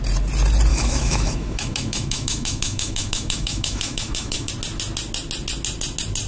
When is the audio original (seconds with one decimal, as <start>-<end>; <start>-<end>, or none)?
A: 0.0-0.7; 4.5-6.3